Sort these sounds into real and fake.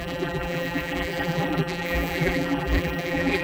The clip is fake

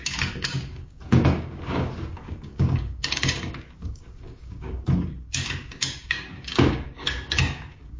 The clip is fake